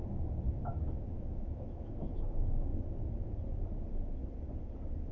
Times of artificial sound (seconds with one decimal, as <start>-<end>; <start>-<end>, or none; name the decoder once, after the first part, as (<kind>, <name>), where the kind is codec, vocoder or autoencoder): 0.7-2.2 (autoencoder, DAC-VAE)